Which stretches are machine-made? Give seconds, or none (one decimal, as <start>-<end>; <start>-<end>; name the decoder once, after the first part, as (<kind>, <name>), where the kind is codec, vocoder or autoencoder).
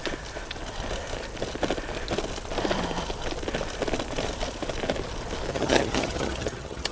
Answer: 5.5-6.9 (vocoder, HiFi-GAN)